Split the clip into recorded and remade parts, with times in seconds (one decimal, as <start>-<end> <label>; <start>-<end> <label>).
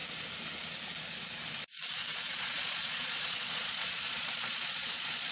0.0-2.3 recorded; 2.3-5.3 remade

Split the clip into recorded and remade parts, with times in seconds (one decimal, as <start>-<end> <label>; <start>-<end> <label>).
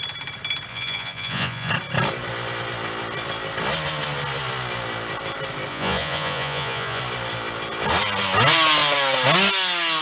0.0-0.7 recorded; 0.7-1.7 remade; 1.7-5.7 recorded; 5.7-7.0 remade; 7.0-10.0 recorded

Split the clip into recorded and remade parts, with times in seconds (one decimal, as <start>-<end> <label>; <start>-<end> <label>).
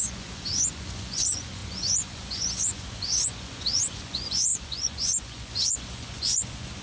0.0-6.8 remade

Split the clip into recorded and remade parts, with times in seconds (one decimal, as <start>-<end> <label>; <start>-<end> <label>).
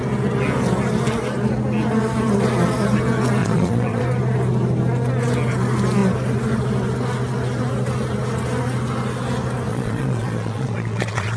0.0-3.4 recorded; 3.4-4.0 remade; 4.0-9.7 recorded; 9.7-11.4 remade